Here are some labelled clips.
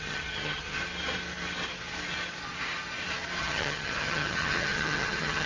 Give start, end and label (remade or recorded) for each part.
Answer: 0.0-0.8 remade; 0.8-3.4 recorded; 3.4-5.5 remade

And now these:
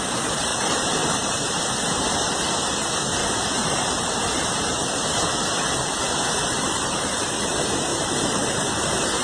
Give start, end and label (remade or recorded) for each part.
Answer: 0.0-0.5 recorded; 0.5-1.7 remade; 1.7-3.2 recorded; 3.2-4.5 remade; 4.5-6.4 recorded; 6.4-7.5 remade; 7.5-7.9 recorded; 7.9-9.2 remade

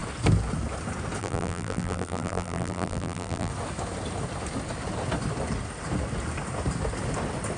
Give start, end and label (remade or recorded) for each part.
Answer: 0.0-1.2 recorded; 1.2-3.5 remade; 3.5-7.6 recorded

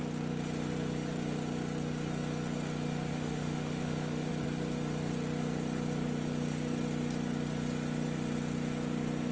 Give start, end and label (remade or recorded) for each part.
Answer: 0.0-3.1 recorded; 3.1-4.3 remade; 4.3-9.3 recorded